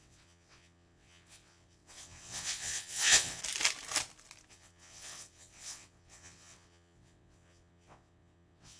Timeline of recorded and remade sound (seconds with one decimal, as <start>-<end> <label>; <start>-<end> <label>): 0.0-3.4 remade; 3.4-4.5 recorded; 4.5-8.8 remade